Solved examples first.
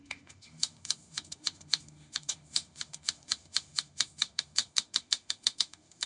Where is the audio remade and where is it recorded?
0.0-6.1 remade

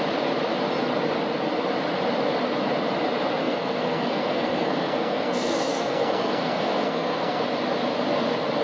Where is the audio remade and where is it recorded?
0.0-3.4 recorded; 3.4-7.4 remade; 7.4-8.6 recorded

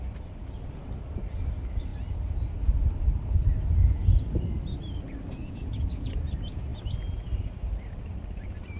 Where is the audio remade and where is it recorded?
0.0-5.4 recorded; 5.4-6.2 remade; 6.2-8.8 recorded

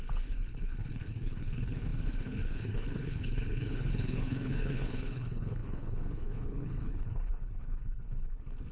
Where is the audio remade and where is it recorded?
0.0-8.7 remade

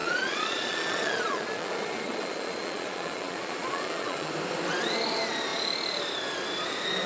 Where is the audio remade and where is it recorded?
0.0-4.3 remade; 4.3-7.1 recorded